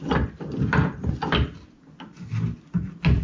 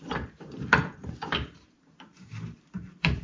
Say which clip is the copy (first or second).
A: second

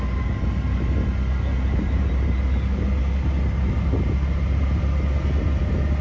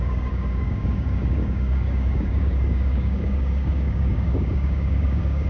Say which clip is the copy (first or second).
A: second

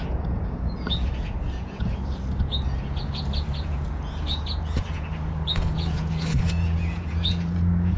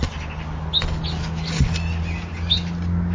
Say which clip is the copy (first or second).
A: first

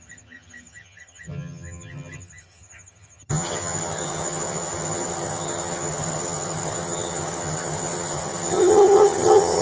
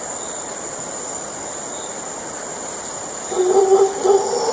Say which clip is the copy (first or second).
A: first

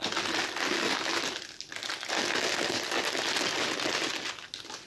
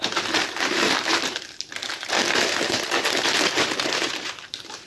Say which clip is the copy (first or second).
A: second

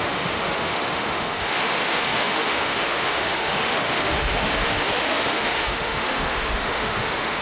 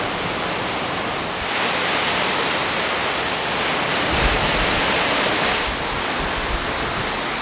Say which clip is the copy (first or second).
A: first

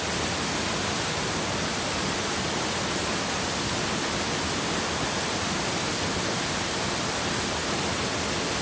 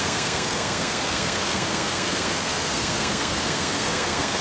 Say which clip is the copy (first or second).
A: second